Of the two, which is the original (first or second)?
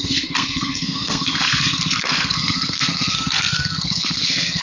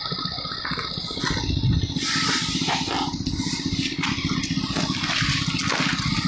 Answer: second